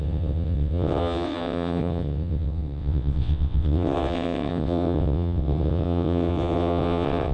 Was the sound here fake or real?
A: fake